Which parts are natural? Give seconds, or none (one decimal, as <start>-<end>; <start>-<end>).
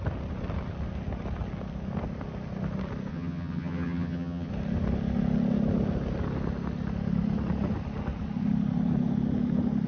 0.0-3.1; 4.5-9.9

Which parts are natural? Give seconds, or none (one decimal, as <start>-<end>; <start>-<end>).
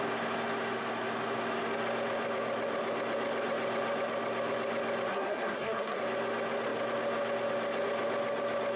0.0-5.1; 6.0-8.8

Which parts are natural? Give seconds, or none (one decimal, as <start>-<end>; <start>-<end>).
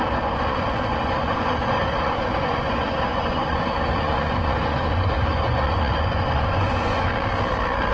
7.1-7.9